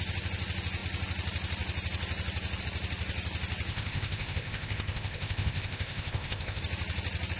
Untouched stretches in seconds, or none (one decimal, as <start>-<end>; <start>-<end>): 0.0-3.7; 6.6-7.4